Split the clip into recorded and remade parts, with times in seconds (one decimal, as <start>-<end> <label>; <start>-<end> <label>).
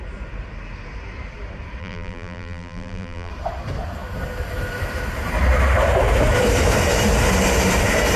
0.0-1.8 recorded; 1.8-3.3 remade; 3.3-8.2 recorded